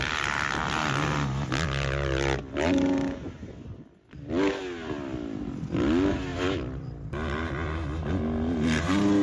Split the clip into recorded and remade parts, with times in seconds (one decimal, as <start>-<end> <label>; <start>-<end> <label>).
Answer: 0.0-9.2 recorded